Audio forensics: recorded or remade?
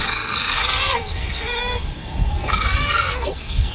remade